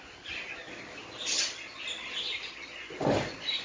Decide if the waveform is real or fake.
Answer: real